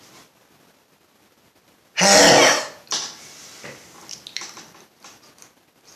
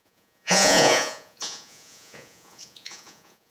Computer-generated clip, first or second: second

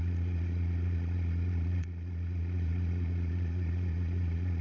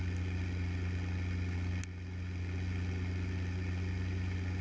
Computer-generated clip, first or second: first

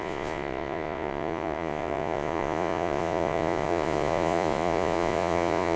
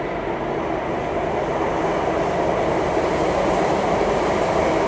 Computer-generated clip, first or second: first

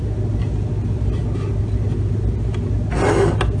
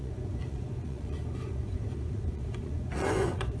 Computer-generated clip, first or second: second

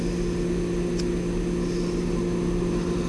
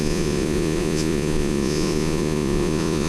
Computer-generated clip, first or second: second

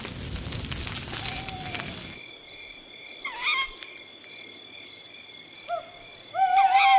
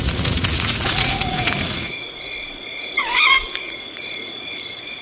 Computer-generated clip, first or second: second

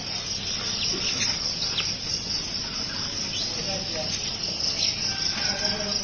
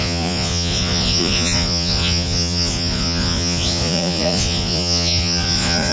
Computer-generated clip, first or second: second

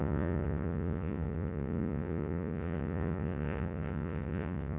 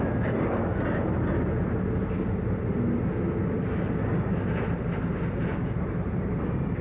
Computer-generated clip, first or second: first